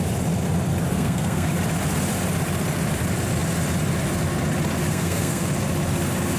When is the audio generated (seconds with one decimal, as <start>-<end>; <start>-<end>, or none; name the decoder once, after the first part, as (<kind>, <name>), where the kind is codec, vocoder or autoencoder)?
0.9-1.5 (codec, SNAC); 4.9-5.5